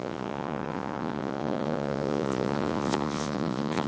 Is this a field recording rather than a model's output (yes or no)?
no